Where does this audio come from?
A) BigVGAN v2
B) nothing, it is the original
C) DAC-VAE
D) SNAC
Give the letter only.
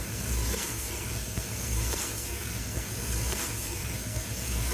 D